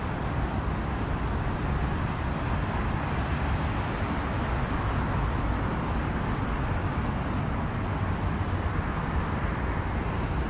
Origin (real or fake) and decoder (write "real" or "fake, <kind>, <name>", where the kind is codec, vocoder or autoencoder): real